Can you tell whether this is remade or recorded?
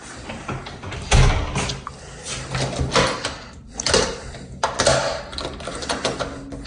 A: recorded